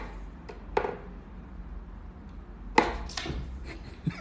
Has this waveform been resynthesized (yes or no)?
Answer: no